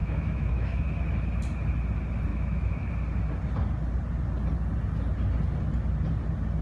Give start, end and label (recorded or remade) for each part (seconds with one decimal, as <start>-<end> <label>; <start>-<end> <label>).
0.0-0.8 remade; 0.8-2.3 recorded; 2.3-2.9 remade; 2.9-6.6 recorded